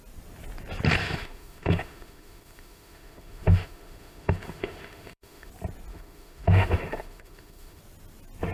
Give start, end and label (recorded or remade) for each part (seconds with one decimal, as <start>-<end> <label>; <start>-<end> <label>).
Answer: 0.0-1.0 recorded; 1.0-5.5 remade; 5.5-5.9 recorded; 5.9-7.8 remade; 7.8-8.5 recorded